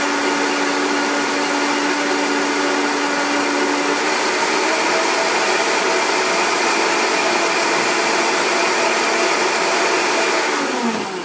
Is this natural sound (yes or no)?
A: yes